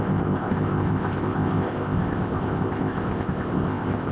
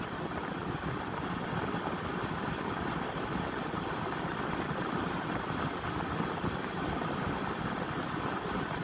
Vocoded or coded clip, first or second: first